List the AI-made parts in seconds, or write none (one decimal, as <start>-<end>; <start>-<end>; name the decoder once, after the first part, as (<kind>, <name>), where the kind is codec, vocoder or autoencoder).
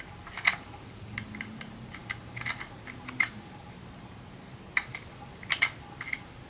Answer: none